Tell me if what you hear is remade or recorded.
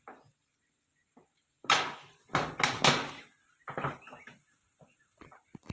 recorded